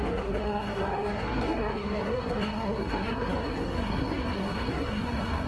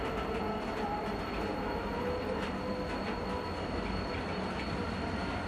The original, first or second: second